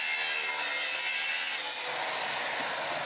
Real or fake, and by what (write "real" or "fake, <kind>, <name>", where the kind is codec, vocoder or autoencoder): real